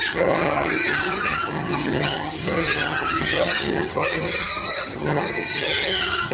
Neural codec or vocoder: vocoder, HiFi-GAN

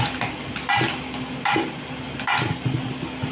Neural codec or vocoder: none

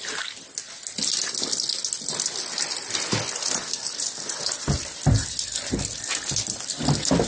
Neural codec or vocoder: none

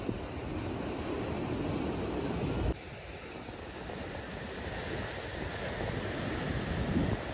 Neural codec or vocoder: none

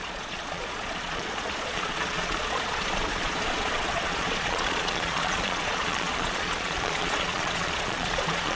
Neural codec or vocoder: vocoder, Vocos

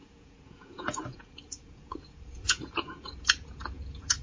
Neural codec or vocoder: vocoder, Vocos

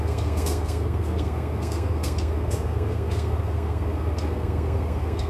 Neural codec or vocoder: codec, SNAC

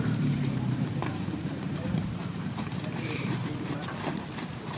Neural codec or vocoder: vocoder, BigVGAN v2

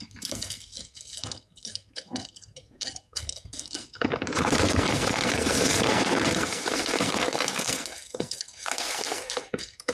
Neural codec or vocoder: codec, SNAC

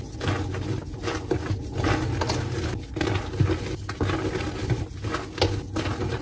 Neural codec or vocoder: none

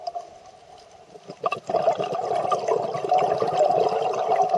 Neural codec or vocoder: none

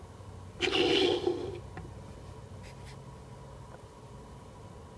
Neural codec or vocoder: none